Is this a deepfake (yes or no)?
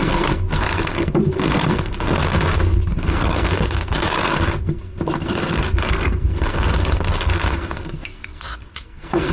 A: yes